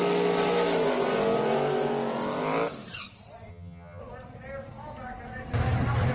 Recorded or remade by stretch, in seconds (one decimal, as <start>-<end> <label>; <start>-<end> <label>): 0.0-3.5 recorded; 3.5-4.0 remade; 4.0-6.1 recorded